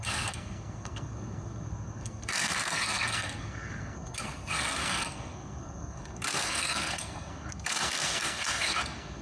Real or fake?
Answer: fake